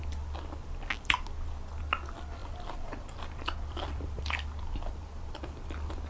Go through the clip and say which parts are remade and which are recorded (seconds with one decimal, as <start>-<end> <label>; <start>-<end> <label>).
0.0-2.4 recorded; 2.4-6.1 remade